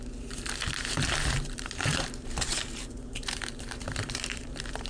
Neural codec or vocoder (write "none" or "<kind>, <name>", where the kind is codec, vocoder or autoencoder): vocoder, BigVGAN v2